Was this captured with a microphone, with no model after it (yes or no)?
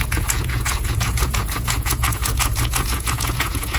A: no